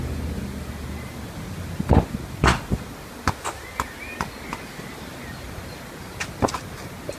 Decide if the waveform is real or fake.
real